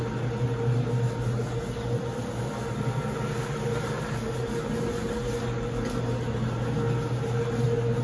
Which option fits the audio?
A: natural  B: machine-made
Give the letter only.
A